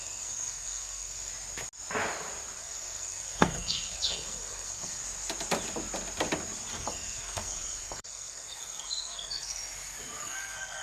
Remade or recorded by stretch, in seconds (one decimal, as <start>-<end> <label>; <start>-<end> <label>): 0.0-1.3 remade; 1.3-2.6 recorded; 2.6-5.0 remade; 5.0-6.7 recorded; 6.7-9.6 remade; 9.6-10.2 recorded; 10.2-10.8 remade